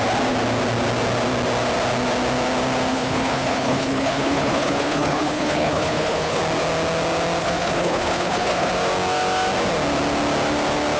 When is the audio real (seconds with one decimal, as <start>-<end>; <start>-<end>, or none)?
0.0-2.9; 6.4-7.4; 8.7-11.0